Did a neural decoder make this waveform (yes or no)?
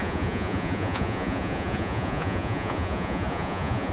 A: yes